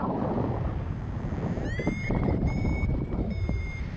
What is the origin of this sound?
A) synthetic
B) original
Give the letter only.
A